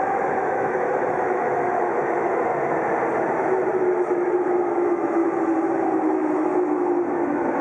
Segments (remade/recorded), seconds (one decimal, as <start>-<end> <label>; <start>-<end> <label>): 0.0-2.5 remade; 2.5-3.7 recorded; 3.7-5.2 remade; 5.2-6.0 recorded; 6.0-6.5 remade; 6.5-7.1 recorded; 7.1-7.6 remade